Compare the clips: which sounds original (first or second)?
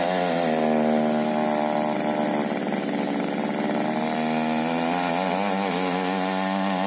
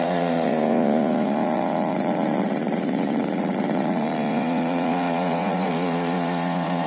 first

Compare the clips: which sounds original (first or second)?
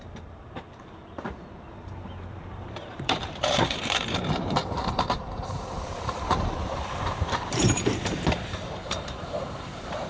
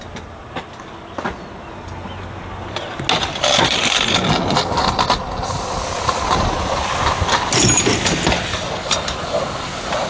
second